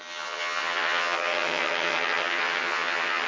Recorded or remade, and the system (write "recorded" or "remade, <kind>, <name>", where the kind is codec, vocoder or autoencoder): remade, vocoder, HiFi-GAN